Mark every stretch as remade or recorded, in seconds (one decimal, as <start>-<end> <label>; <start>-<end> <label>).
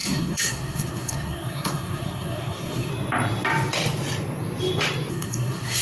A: 0.0-2.9 remade; 2.9-5.1 recorded; 5.1-5.8 remade